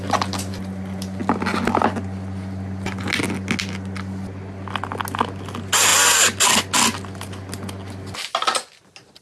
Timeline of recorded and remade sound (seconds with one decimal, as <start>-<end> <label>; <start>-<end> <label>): 0.0-9.2 recorded